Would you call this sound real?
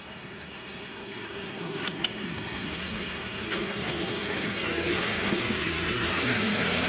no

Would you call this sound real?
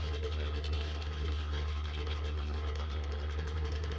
no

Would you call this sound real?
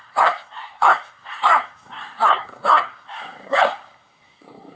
no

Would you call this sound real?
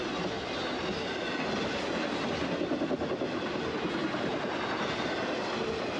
yes